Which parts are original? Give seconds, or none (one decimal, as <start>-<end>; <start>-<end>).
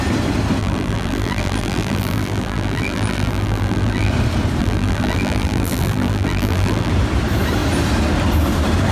0.0-0.6; 4.1-4.6; 6.9-8.9